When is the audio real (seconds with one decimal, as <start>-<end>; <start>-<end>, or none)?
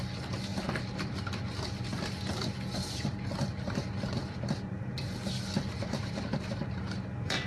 0.0-7.5